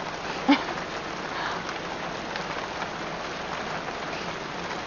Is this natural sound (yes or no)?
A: yes